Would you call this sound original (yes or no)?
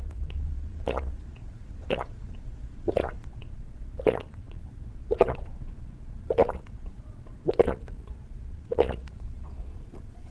no